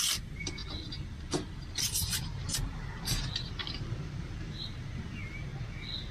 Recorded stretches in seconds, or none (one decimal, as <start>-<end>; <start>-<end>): 5.5-6.1